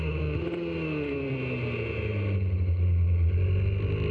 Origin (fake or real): real